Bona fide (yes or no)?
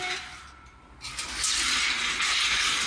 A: yes